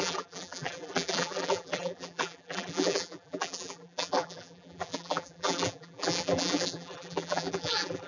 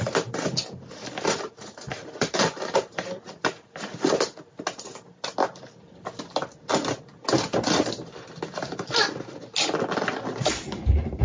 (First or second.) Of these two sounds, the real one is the second